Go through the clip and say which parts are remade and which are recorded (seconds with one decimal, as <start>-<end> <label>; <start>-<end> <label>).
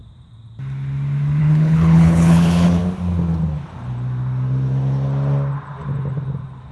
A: 0.0-1.4 recorded; 1.4-2.8 remade; 2.8-6.7 recorded